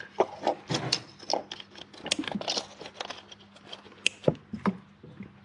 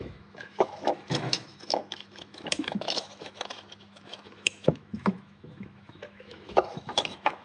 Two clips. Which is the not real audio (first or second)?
second